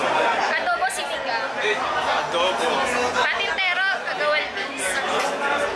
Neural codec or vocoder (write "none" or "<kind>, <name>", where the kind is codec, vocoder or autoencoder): none